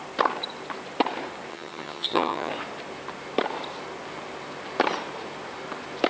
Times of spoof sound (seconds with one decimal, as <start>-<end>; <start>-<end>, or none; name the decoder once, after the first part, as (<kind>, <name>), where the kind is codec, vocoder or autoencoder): 1.5-2.5 (vocoder, HiFi-GAN)